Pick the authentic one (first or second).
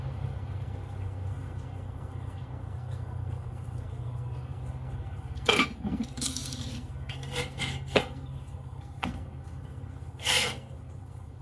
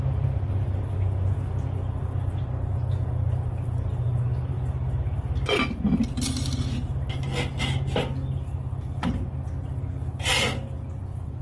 second